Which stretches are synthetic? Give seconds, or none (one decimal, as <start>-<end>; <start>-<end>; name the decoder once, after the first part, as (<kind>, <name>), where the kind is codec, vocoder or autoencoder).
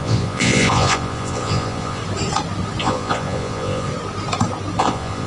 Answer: 0.0-2.0 (vocoder, Vocos); 2.8-3.9; 4.8-5.3